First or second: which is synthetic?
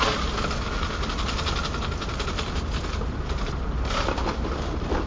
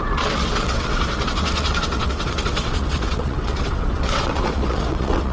second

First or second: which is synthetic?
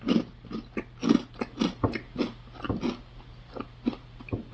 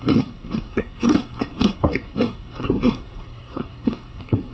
second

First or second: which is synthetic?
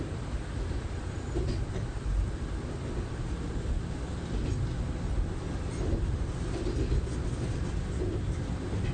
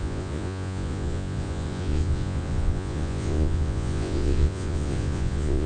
second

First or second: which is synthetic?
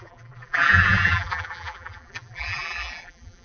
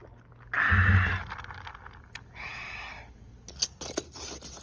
first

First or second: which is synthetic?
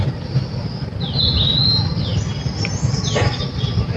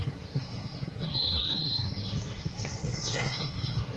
second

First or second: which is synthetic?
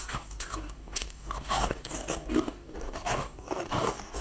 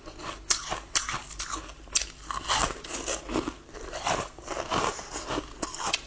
first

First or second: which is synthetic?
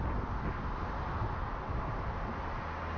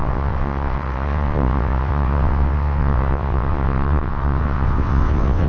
second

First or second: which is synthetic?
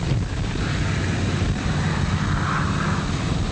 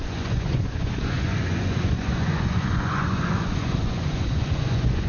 second